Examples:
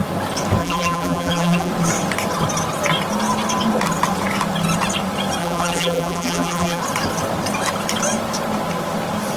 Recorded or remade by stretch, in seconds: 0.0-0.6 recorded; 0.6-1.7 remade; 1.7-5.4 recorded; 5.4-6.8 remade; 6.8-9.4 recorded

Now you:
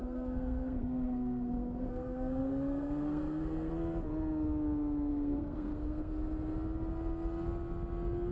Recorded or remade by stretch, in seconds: 0.0-3.7 remade; 3.7-5.1 recorded; 5.1-6.1 remade; 6.1-8.3 recorded

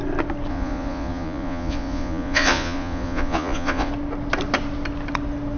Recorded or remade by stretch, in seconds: 0.0-0.5 recorded; 0.5-3.9 remade; 3.9-5.6 recorded

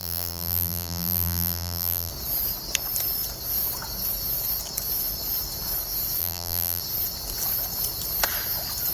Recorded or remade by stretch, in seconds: 0.0-2.1 remade; 2.1-6.2 recorded; 6.2-6.8 remade; 6.8-8.9 recorded

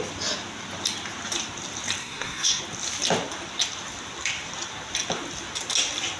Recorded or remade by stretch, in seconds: 0.0-2.0 recorded; 2.0-2.6 remade; 2.6-6.2 recorded

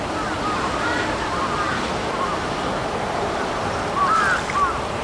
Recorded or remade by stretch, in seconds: 0.0-2.8 recorded; 2.8-4.2 remade; 4.2-5.0 recorded

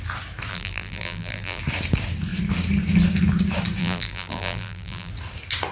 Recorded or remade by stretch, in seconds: 0.0-0.5 recorded; 0.5-1.6 remade; 1.6-3.8 recorded; 3.8-5.1 remade; 5.1-5.7 recorded

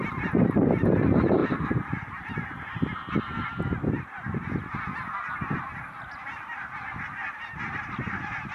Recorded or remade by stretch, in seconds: 0.0-8.5 recorded